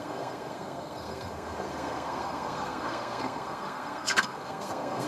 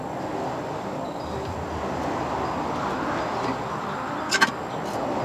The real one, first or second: second